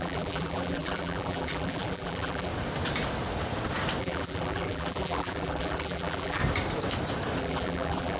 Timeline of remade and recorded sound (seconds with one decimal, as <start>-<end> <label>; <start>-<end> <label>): 0.0-2.5 remade; 2.5-4.0 recorded; 4.0-6.4 remade; 6.4-7.4 recorded; 7.4-8.2 remade